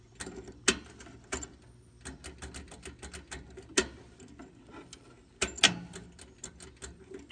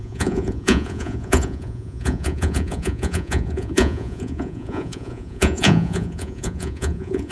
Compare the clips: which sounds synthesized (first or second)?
second